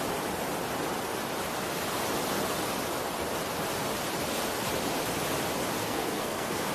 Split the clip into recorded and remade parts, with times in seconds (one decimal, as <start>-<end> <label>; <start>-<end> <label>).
0.0-5.8 recorded; 5.8-6.7 remade